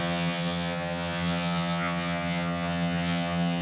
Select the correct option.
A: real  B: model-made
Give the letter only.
B